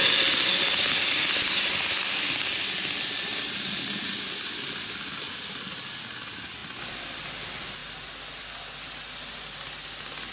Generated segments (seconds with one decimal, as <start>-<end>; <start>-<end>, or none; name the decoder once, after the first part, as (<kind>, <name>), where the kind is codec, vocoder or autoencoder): none